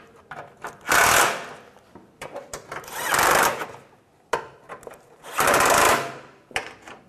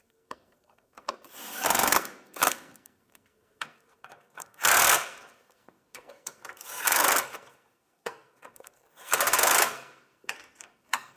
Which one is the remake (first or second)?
second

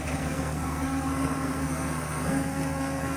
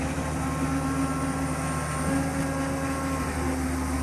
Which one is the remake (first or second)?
first